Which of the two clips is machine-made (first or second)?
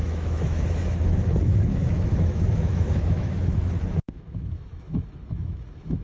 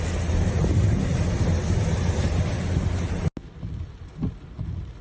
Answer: first